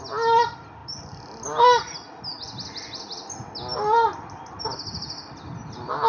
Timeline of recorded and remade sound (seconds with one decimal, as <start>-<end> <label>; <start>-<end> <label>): 0.0-6.1 recorded